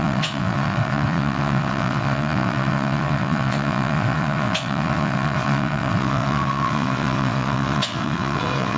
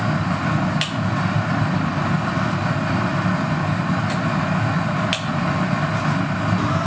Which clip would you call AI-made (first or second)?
first